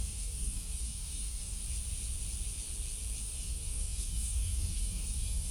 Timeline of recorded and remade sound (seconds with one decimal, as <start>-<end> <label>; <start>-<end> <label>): 0.0-1.6 remade; 1.6-3.2 recorded; 3.2-5.5 remade